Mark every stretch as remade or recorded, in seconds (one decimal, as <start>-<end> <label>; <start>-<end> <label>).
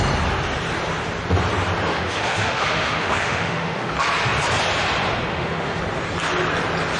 0.0-1.9 recorded; 1.9-3.9 remade; 3.9-5.3 recorded; 5.3-5.8 remade; 5.8-7.0 recorded